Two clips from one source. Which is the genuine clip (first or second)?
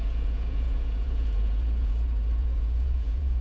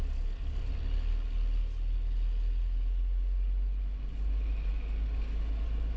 second